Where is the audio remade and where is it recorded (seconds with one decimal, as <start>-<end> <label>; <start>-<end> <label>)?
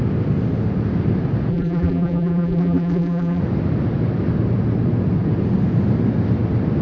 0.0-1.5 recorded; 1.5-3.4 remade; 3.4-6.8 recorded